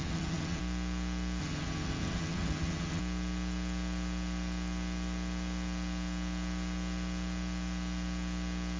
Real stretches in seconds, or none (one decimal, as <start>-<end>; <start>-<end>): 0.6-1.4; 3.0-8.8